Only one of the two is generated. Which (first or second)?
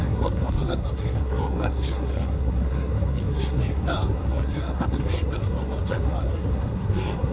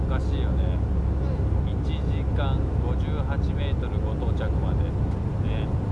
first